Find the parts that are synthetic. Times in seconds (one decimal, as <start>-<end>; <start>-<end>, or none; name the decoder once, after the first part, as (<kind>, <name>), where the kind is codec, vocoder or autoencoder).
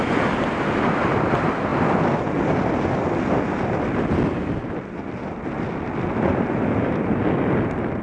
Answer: none